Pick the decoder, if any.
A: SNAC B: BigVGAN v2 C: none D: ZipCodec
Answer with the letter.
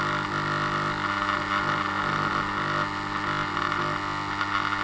C